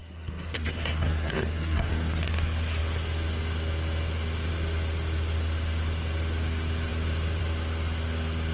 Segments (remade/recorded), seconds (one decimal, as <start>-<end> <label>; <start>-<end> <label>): 0.0-1.9 remade; 1.9-8.5 recorded